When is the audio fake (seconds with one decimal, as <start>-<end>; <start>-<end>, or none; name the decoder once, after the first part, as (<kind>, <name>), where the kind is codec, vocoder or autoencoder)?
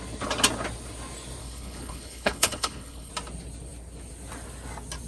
1.4-3.1 (codec, HILCodec)